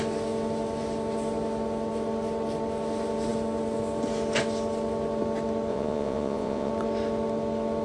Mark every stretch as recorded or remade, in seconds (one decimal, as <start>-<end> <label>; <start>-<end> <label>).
0.0-5.7 recorded; 5.7-6.7 remade; 6.7-7.8 recorded